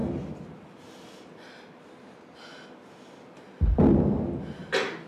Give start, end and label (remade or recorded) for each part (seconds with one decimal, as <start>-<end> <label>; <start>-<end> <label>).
0.0-5.1 recorded